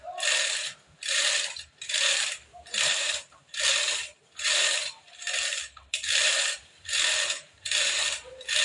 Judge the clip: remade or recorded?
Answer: remade